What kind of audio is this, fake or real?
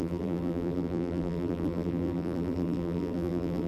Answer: fake